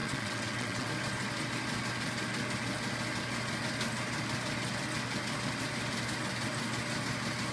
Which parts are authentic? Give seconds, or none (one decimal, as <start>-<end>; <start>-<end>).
0.9-7.5